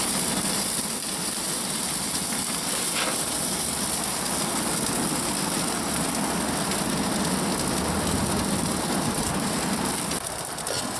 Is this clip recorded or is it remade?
recorded